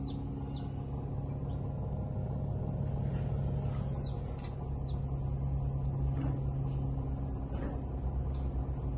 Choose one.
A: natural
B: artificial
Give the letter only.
A